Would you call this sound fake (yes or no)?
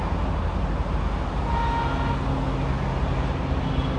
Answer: no